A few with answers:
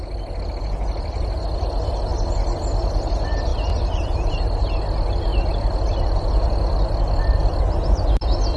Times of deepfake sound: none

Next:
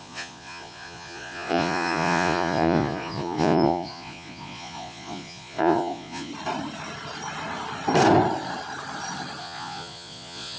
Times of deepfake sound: 0.0-6.3 (vocoder, Vocos); 9.4-10.6

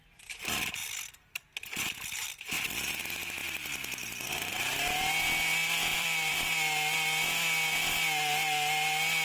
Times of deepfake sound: 0.8-3.0 (vocoder, BigVGAN v2); 3.4-4.5; 5.9-6.5

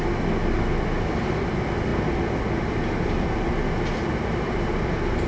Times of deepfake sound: none

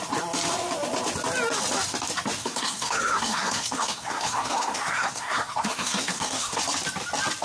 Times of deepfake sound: 2.4-6.6 (codec, SNAC)